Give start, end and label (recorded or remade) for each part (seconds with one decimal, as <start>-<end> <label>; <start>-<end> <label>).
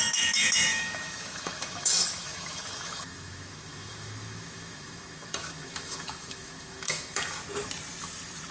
0.0-7.4 remade; 7.4-8.5 recorded